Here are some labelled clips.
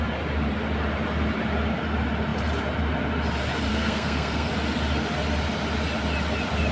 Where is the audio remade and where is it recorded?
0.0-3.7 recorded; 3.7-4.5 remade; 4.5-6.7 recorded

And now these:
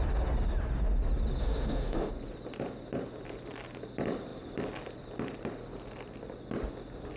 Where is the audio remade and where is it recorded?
0.0-1.4 recorded; 1.4-2.1 remade; 2.1-7.2 recorded

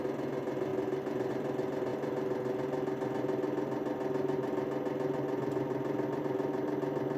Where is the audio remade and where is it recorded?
0.0-7.2 recorded

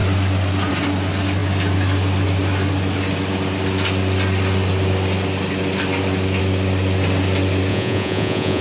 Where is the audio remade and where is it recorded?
0.0-7.7 recorded; 7.7-8.6 remade

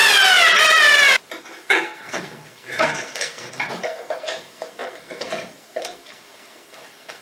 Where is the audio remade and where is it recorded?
0.0-1.4 recorded; 1.4-7.2 remade

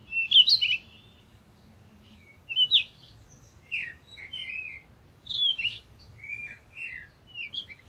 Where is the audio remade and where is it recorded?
0.0-1.2 recorded; 1.2-4.4 remade; 4.4-5.1 recorded; 5.1-6.8 remade; 6.8-7.5 recorded; 7.5-7.9 remade

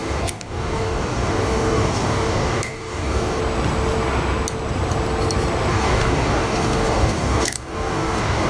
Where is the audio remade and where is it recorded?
0.0-3.4 remade; 3.4-5.7 recorded; 5.7-8.5 remade

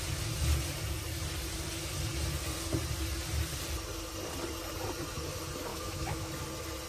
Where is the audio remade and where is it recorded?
0.0-5.7 recorded; 5.7-6.3 remade; 6.3-6.9 recorded